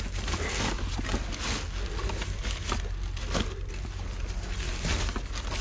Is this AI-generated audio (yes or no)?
no